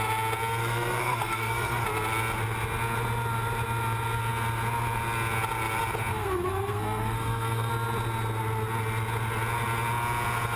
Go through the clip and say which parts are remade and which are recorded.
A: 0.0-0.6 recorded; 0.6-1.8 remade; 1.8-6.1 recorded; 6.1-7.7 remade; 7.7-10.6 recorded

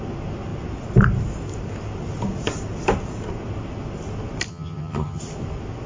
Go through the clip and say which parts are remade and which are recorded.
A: 0.0-4.5 recorded; 4.5-5.2 remade; 5.2-5.9 recorded

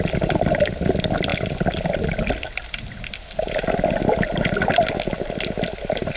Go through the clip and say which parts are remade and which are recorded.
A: 0.0-6.2 recorded